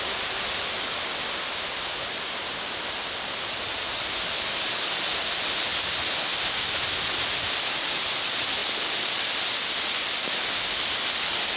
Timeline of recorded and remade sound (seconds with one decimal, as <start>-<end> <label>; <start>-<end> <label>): 0.0-11.6 recorded